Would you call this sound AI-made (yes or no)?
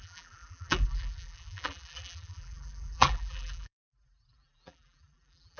yes